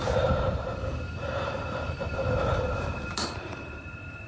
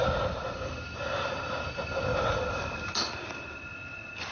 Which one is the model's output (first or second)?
first